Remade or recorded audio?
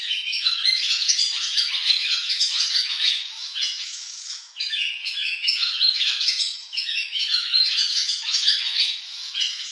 remade